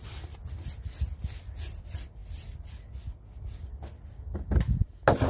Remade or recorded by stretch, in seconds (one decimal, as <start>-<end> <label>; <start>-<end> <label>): 0.0-5.3 recorded